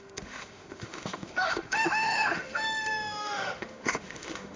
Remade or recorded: remade